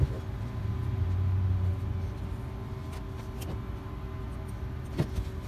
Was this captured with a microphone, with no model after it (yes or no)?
yes